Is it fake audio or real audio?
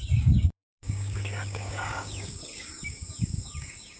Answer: fake